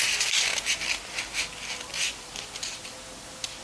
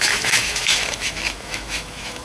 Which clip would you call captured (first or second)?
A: first